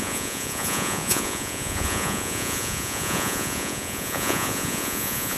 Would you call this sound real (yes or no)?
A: no